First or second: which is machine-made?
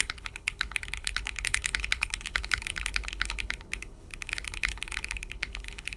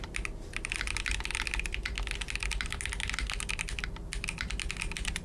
first